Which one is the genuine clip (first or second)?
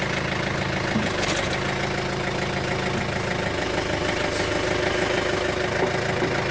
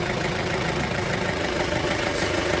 first